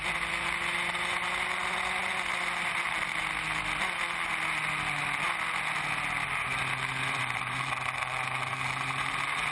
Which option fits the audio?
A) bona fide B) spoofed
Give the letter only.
A